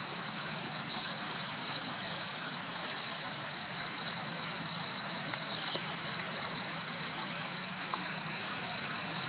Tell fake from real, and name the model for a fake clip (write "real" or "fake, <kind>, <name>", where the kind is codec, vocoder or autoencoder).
fake, codec, DAC